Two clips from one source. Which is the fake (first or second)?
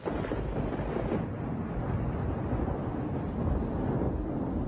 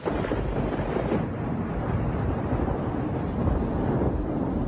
second